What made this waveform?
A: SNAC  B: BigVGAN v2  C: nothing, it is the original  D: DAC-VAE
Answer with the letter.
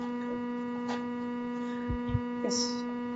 C